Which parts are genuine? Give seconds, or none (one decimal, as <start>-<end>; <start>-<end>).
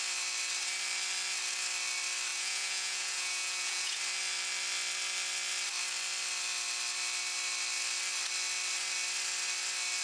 0.0-2.3; 4.0-10.0